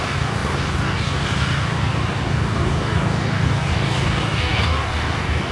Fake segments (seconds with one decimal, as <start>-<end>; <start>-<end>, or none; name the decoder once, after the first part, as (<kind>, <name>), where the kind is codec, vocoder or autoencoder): 0.0-5.5 (codec, DAC)